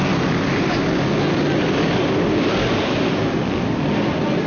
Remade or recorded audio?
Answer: recorded